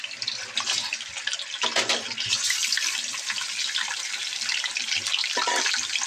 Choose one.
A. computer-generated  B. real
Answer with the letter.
B